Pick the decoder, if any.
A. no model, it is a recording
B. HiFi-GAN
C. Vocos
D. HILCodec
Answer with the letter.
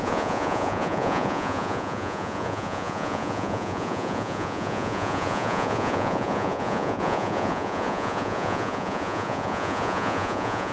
C